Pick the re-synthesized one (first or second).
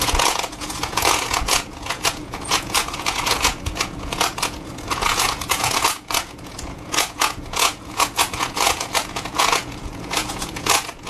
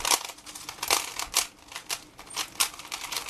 first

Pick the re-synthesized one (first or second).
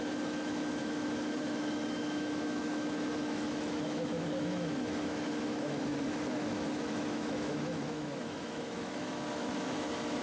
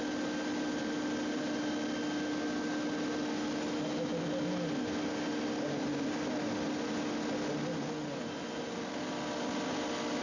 first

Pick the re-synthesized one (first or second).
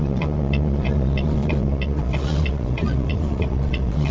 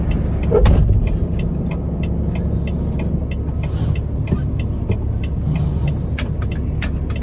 first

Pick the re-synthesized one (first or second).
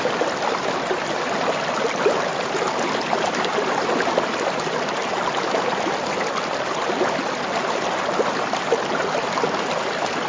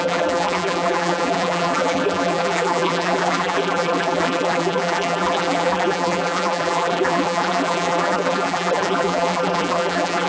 second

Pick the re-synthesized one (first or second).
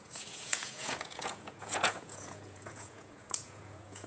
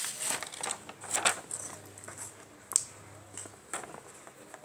first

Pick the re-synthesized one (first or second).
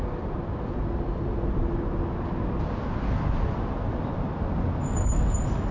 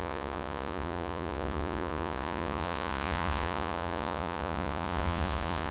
second